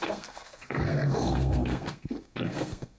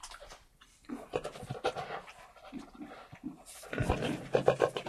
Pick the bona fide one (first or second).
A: second